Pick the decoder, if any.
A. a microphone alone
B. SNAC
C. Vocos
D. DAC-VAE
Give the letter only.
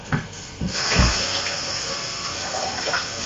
B